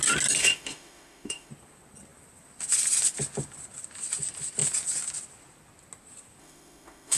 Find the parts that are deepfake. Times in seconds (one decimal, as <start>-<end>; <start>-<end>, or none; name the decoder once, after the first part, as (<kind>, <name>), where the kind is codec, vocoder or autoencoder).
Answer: 0.4-1.5 (autoencoder, DAC-VAE); 6.4-7.2